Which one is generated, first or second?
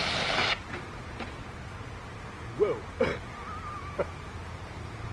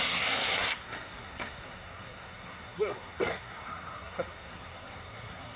second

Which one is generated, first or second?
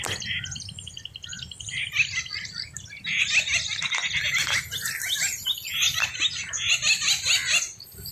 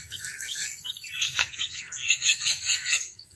second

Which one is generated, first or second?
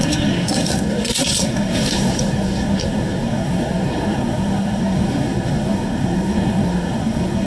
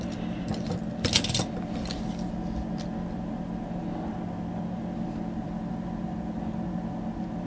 first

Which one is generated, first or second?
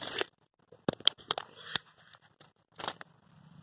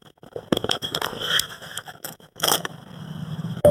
second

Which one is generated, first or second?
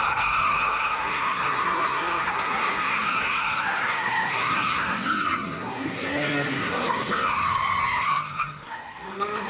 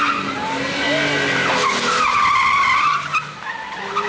first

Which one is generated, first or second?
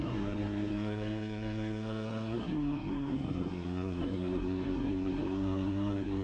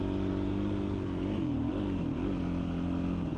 first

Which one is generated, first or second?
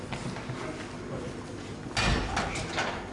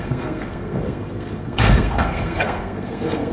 second